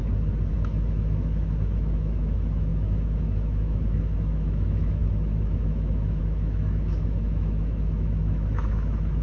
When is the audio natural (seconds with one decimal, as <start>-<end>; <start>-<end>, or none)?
0.0-0.5